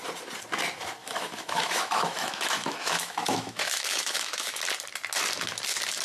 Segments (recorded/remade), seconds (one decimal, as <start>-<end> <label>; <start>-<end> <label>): 0.0-1.0 recorded; 1.0-4.6 remade; 4.6-6.0 recorded